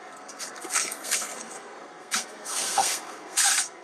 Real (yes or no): no